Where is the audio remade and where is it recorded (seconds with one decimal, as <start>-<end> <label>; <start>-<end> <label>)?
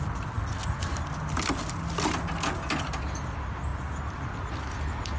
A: 0.0-5.2 recorded